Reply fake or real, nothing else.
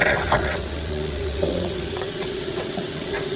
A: fake